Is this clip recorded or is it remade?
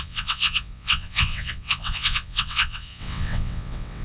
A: remade